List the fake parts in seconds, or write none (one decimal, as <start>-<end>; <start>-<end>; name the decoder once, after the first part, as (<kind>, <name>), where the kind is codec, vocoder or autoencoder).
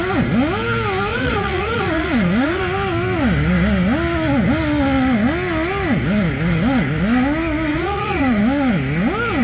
1.1-2.6 (vocoder, Vocos); 7.7-8.4